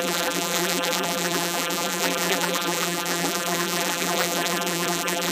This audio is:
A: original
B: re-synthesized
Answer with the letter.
B